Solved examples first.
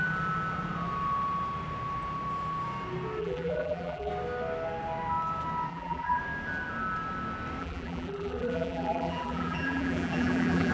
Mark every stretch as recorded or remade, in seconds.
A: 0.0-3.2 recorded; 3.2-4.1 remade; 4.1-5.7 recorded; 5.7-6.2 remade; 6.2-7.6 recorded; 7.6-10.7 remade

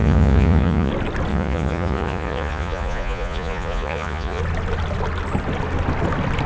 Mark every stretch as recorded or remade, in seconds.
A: 0.0-0.9 remade; 0.9-1.3 recorded; 1.3-4.4 remade; 4.4-6.5 recorded

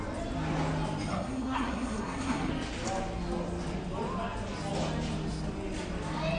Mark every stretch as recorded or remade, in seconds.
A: 0.0-1.1 recorded; 1.1-2.5 remade; 2.5-6.4 recorded

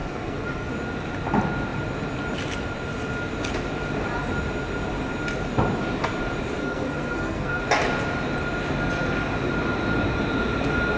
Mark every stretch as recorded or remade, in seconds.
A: 0.0-0.7 remade; 0.7-6.6 recorded; 6.6-7.6 remade; 7.6-11.0 recorded

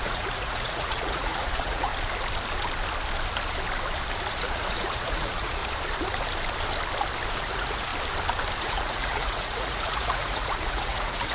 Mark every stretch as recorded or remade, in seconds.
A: 0.0-1.9 remade; 1.9-4.3 recorded; 4.3-5.6 remade; 5.6-7.3 recorded; 7.3-7.9 remade; 7.9-8.6 recorded; 8.6-11.3 remade

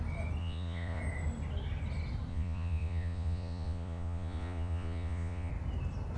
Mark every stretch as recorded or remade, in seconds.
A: 0.0-0.4 recorded; 0.4-1.0 remade; 1.0-2.3 recorded; 2.3-5.5 remade; 5.5-6.2 recorded

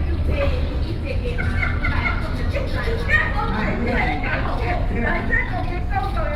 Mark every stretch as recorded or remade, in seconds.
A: 0.0-3.8 recorded; 3.8-5.9 remade; 5.9-6.4 recorded